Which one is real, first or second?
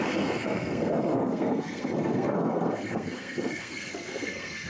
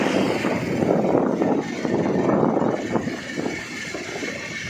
second